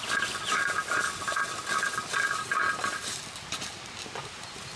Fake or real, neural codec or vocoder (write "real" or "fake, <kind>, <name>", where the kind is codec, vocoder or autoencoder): real